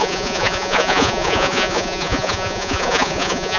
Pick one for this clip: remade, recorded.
remade